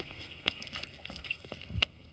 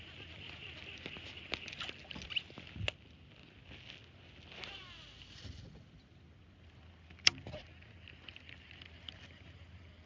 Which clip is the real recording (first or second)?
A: second